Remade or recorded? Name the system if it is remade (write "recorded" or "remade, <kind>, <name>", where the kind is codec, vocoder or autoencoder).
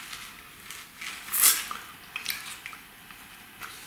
recorded